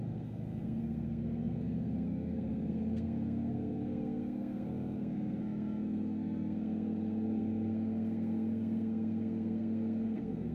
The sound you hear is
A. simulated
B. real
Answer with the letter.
A